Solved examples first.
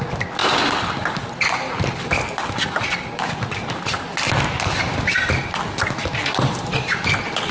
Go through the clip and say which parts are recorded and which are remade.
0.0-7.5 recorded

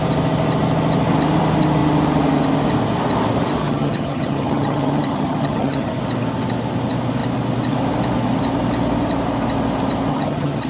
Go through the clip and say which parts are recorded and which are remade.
0.0-3.6 recorded; 3.6-6.0 remade; 6.0-10.1 recorded; 10.1-10.7 remade